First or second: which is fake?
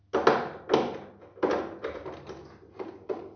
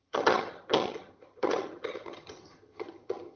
second